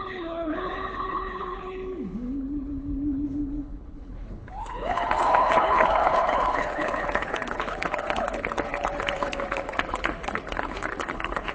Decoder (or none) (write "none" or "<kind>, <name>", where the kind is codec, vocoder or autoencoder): codec, HILCodec